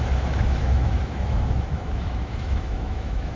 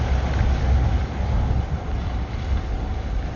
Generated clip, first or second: first